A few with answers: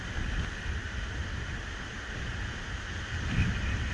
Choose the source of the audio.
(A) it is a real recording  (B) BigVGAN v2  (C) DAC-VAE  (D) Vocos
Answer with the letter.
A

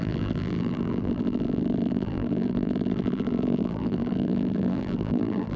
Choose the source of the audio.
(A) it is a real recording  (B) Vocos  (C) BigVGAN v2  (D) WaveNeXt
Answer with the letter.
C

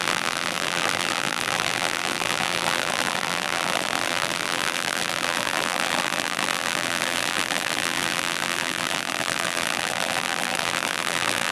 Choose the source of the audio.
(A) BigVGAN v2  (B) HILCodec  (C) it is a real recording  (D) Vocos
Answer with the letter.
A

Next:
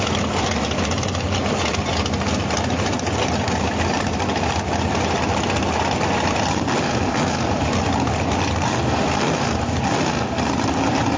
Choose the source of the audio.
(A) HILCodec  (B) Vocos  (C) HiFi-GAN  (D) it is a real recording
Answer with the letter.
D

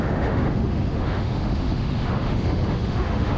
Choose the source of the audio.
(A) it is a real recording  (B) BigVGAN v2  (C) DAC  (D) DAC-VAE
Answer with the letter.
D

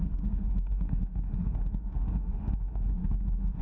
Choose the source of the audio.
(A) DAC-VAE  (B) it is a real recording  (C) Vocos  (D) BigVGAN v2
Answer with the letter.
A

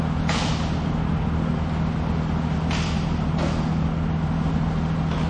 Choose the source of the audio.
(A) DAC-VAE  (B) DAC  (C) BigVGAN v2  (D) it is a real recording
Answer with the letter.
D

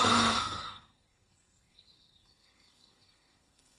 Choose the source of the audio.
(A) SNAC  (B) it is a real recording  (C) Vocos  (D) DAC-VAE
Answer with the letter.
A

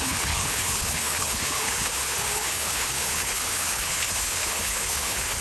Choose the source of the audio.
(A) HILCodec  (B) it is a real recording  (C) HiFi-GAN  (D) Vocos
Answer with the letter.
A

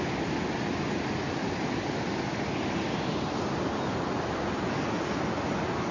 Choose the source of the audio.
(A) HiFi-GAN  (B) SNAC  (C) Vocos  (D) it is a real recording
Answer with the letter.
D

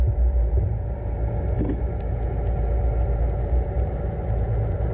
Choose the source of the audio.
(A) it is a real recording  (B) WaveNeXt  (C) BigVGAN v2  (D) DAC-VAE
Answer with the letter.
A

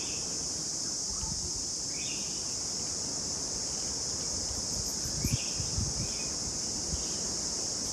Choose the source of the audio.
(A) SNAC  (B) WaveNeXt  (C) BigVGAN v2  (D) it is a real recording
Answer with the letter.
D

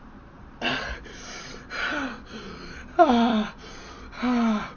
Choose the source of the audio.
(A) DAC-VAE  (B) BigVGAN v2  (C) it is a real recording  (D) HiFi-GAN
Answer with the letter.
C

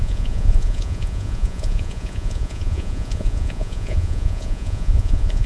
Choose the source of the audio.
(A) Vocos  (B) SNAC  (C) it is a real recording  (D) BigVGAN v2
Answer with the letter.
A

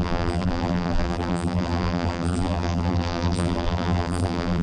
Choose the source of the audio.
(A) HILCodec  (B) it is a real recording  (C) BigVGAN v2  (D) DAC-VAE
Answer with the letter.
C